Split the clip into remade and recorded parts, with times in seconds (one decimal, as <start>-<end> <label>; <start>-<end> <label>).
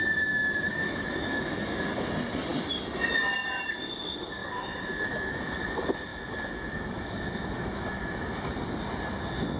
0.0-2.1 remade; 2.1-4.4 recorded; 4.4-5.6 remade; 5.6-6.1 recorded; 6.1-8.5 remade; 8.5-9.6 recorded